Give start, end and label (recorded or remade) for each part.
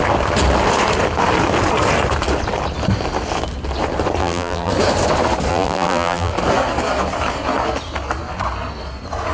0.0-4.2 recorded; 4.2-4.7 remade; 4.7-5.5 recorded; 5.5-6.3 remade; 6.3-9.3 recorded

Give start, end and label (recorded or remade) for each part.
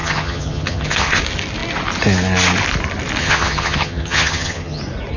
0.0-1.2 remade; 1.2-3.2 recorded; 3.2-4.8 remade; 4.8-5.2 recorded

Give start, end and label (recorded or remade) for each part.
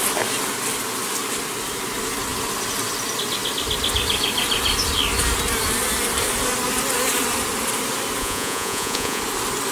0.0-8.2 recorded; 8.2-9.2 remade; 9.2-9.7 recorded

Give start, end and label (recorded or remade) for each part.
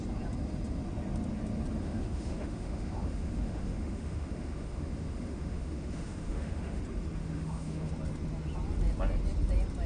0.0-1.8 recorded; 1.8-6.8 remade; 6.8-7.2 recorded; 7.2-7.9 remade; 7.9-9.9 recorded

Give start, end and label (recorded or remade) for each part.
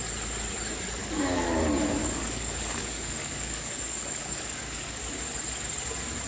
0.0-1.0 recorded; 1.0-1.6 remade; 1.6-2.0 recorded; 2.0-5.0 remade; 5.0-6.3 recorded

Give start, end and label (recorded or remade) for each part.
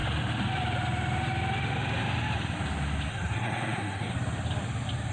0.0-3.1 recorded; 3.1-4.1 remade; 4.1-5.1 recorded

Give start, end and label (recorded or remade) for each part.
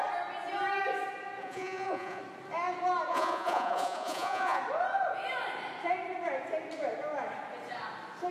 0.0-1.4 recorded; 1.4-2.2 remade; 2.2-3.1 recorded; 3.1-4.6 remade; 4.6-8.3 recorded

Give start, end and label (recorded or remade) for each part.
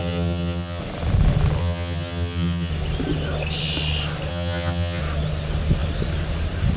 0.0-0.8 remade; 0.8-1.6 recorded; 1.6-2.7 remade; 2.7-4.3 recorded; 4.3-5.0 remade; 5.0-6.8 recorded